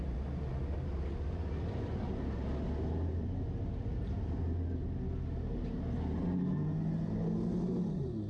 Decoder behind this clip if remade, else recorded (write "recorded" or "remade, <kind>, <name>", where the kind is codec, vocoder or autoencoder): recorded